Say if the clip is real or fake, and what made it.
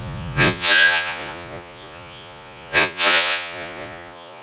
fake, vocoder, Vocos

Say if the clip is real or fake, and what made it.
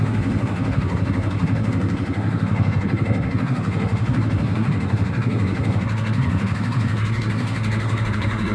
fake, codec, SNAC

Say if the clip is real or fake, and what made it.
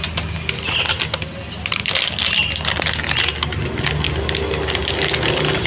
real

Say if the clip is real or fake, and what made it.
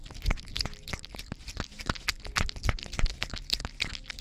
real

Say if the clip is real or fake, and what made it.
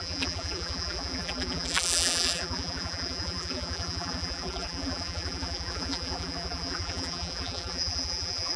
fake, vocoder, BigVGAN v2